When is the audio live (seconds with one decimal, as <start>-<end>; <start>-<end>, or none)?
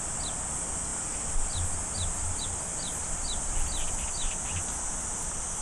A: 0.0-5.6